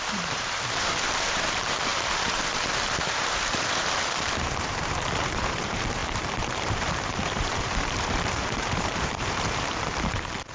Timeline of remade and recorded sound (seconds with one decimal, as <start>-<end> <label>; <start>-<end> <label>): 0.0-10.5 remade